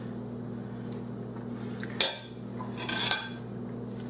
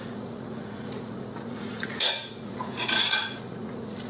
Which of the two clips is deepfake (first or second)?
second